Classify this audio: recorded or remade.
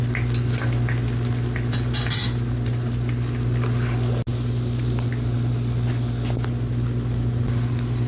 recorded